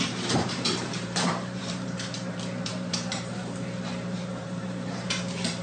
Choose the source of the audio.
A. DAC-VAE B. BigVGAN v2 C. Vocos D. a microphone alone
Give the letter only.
B